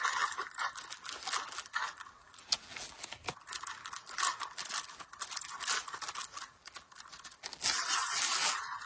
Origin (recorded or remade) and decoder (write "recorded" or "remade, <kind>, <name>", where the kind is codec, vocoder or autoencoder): remade, vocoder, BigVGAN v2